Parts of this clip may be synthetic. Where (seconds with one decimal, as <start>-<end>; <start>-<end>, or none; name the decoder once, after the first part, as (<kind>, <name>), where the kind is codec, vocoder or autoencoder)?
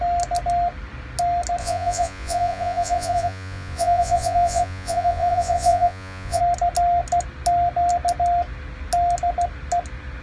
1.6-6.4 (vocoder, Vocos)